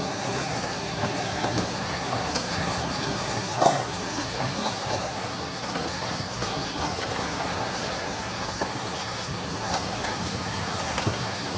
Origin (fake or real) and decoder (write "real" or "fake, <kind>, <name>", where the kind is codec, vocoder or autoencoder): fake, codec, SNAC